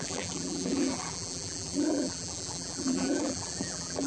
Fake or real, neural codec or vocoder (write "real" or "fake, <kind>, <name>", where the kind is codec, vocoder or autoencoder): fake, vocoder, BigVGAN v2